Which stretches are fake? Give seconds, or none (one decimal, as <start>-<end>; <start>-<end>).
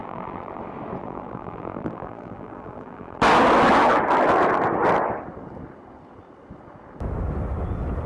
0.0-0.6; 1.0-3.2